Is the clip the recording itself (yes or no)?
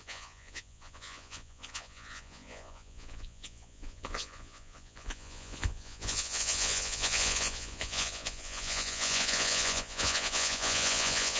no